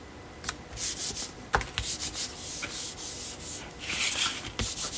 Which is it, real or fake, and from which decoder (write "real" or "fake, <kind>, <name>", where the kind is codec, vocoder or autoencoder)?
real